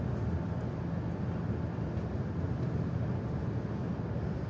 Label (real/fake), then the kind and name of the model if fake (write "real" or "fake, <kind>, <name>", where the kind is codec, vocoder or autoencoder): real